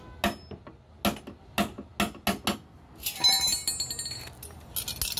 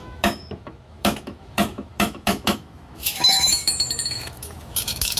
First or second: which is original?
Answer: first